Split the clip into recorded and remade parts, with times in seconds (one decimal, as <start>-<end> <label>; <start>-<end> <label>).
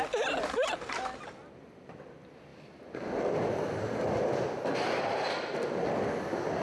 0.0-6.6 recorded